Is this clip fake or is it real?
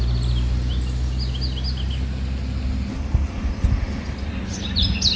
real